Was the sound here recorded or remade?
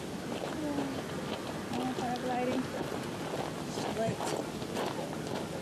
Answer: recorded